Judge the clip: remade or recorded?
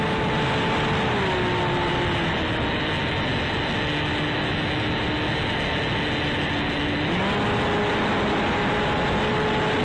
recorded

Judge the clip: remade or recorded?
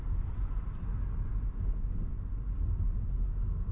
recorded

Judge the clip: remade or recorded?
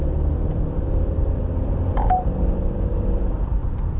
remade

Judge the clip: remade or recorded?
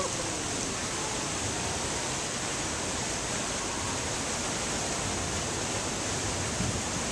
recorded